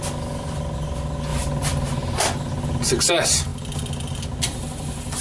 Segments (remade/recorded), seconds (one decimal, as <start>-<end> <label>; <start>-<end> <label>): 0.0-5.2 recorded